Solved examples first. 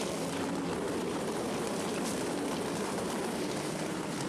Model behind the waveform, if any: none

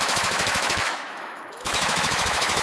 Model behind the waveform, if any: autoencoder, DAC-VAE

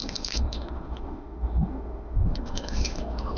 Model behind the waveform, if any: autoencoder, DAC-VAE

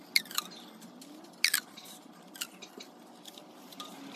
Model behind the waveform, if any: none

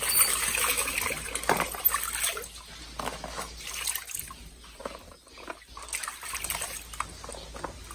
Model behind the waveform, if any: none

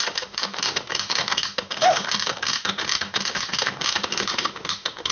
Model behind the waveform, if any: autoencoder, DAC-VAE